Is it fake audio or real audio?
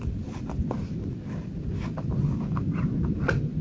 real